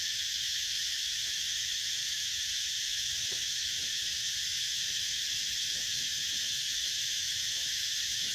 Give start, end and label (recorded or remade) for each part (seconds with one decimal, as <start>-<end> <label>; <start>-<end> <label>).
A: 0.0-8.3 remade